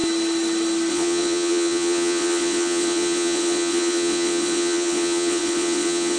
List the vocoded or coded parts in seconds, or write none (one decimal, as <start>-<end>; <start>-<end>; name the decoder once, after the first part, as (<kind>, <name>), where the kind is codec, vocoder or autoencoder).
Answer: 0.9-6.2 (vocoder, Vocos)